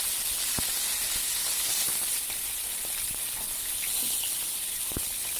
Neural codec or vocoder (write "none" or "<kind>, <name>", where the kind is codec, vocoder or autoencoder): none